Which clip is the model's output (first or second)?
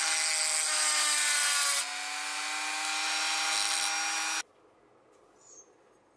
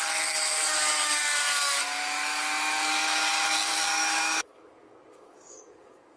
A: second